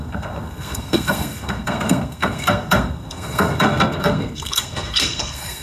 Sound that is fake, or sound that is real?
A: fake